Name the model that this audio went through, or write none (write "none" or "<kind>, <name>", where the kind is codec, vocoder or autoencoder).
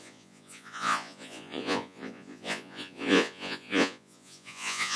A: vocoder, Vocos